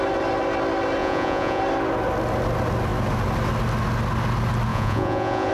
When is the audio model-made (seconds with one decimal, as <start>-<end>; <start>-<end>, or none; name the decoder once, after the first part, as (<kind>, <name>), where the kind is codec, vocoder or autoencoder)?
1.0-1.6 (vocoder, Vocos); 4.7-5.5

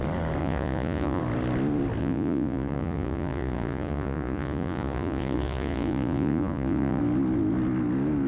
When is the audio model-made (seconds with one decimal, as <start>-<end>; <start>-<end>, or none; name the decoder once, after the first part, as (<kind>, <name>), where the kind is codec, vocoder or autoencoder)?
0.4-1.2 (vocoder, Vocos); 2.0-7.0

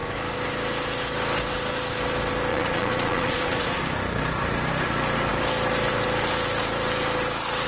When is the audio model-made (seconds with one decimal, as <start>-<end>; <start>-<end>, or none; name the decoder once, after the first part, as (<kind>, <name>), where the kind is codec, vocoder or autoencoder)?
2.5-3.8 (vocoder, Vocos)